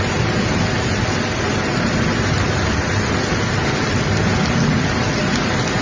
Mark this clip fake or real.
real